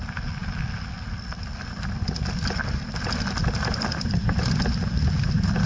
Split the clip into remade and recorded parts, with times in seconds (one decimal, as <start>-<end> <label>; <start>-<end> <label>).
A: 0.0-5.7 recorded